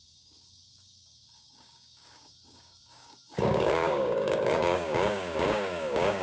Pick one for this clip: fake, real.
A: fake